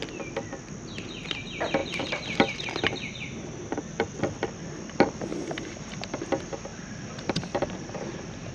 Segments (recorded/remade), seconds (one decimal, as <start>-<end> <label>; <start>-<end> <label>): 0.0-1.8 recorded; 1.8-3.8 remade; 3.8-5.3 recorded; 5.3-6.3 remade; 6.3-8.5 recorded